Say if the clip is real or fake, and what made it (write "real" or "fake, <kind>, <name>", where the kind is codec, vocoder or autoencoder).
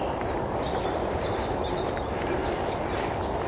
real